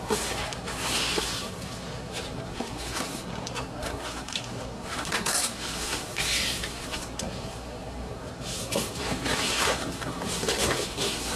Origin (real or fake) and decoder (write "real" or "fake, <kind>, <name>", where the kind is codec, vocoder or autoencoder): fake, codec, SNAC